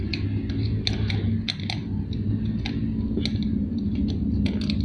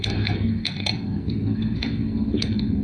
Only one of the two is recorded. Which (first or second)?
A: first